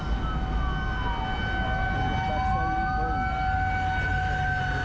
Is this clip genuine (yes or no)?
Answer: yes